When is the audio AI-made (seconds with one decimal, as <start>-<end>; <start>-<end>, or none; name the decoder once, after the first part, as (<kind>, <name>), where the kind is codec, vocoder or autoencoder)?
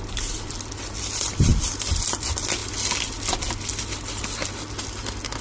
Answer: none